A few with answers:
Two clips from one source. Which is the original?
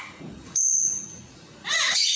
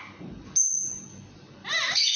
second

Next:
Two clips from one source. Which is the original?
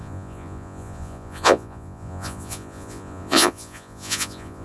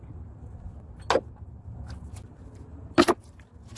second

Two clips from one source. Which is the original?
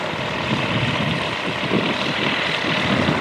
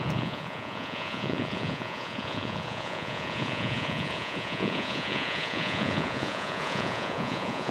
first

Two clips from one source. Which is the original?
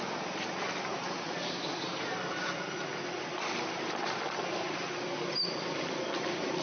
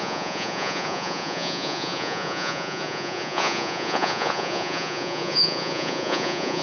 first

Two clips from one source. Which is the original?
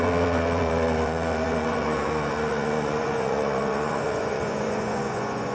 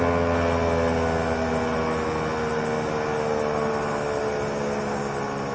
second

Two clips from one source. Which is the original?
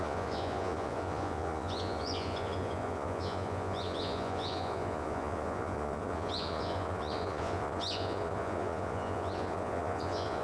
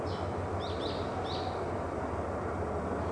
second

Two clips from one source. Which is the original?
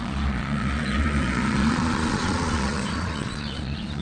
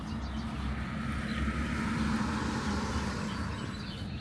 second